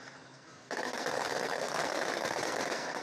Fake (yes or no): yes